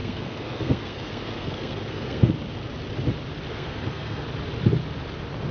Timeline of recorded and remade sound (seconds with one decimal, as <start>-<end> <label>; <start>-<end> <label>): 0.0-2.3 remade; 2.3-3.5 recorded; 3.5-4.2 remade; 4.2-5.5 recorded